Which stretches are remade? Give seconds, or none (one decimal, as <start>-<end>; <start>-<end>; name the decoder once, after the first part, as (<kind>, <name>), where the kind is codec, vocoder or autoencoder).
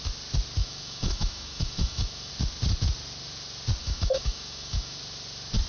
0.6-2.3 (autoencoder, DAC-VAE); 3.8-5.0